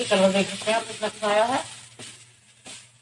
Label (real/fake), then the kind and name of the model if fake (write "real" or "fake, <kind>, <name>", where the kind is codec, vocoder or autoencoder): real